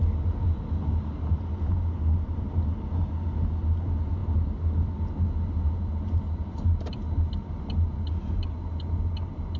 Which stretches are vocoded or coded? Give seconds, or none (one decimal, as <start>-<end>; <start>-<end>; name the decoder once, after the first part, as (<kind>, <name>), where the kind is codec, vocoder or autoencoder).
none